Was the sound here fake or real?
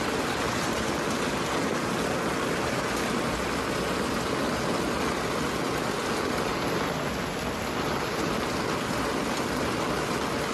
real